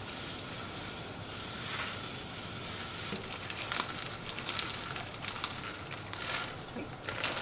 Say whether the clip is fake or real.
real